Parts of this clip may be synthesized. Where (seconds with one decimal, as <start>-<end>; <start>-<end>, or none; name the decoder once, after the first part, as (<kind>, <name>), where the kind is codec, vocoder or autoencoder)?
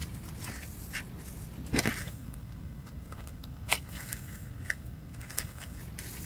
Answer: 2.0-5.8 (codec, SNAC)